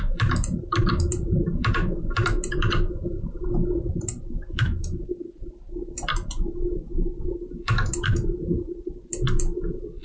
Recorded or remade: remade